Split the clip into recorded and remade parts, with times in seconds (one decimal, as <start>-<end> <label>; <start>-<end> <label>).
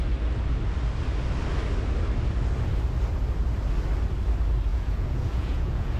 0.0-4.7 recorded; 4.7-6.0 remade